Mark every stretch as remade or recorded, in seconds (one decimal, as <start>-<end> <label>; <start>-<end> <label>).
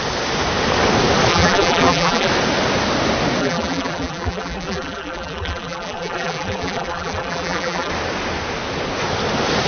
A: 0.0-1.3 recorded; 1.3-2.3 remade; 2.3-3.4 recorded; 3.4-7.9 remade; 7.9-9.7 recorded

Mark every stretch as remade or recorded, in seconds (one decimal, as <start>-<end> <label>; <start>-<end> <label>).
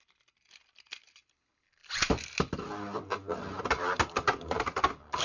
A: 0.0-5.2 recorded